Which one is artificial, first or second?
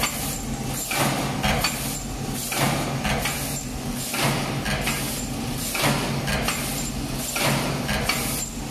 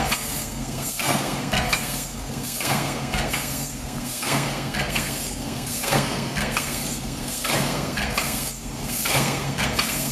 second